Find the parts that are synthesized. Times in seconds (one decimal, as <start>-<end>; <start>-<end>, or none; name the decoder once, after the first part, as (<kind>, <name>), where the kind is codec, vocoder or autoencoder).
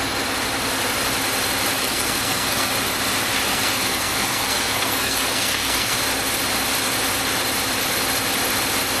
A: 1.8-2.7 (codec, SNAC); 3.5-6.0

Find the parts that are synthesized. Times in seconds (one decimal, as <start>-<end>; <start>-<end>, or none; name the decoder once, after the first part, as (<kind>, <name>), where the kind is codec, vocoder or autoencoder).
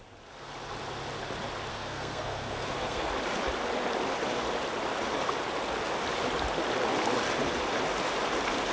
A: 1.7-3.1 (codec, SNAC)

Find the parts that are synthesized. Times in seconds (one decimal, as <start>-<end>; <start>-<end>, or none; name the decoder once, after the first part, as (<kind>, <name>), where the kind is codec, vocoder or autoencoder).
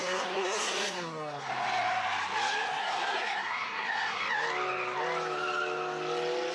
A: 0.0-1.5 (codec, SNAC); 2.8-4.2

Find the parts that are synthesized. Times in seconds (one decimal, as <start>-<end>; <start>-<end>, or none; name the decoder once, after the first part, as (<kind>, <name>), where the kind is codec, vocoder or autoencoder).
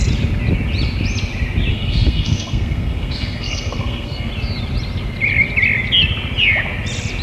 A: 1.7-4.3 (codec, SNAC)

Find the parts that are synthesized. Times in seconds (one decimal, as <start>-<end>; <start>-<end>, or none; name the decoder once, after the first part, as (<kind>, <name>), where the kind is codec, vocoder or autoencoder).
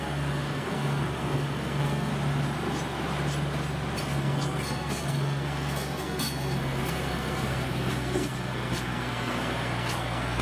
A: 0.0-2.1 (codec, SNAC); 4.0-10.4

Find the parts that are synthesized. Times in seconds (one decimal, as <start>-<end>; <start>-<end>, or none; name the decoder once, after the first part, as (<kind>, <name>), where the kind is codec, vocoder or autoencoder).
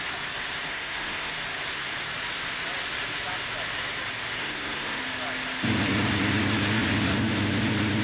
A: 0.7-1.3 (codec, SNAC); 4.4-5.0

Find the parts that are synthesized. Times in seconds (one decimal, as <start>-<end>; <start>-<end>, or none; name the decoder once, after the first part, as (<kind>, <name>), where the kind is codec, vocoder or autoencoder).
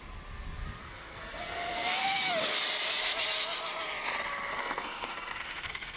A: 0.8-2.2 (codec, SNAC); 4.6-6.0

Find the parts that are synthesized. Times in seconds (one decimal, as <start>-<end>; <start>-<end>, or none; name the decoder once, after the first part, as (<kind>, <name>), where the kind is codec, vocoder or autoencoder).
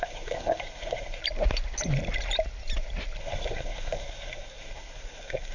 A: 0.0-1.2 (codec, SNAC); 3.2-5.5